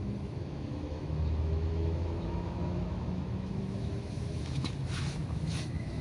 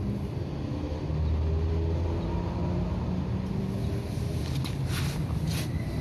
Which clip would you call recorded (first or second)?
second